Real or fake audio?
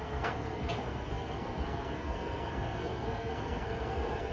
fake